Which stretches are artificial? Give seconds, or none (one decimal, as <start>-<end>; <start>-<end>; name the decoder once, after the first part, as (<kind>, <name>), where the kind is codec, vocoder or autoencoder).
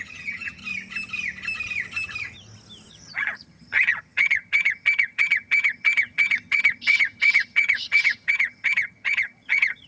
0.0-0.6 (vocoder, HiFi-GAN); 2.9-9.9